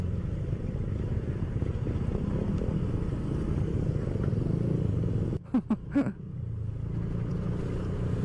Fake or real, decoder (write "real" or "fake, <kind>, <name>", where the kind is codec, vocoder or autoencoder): real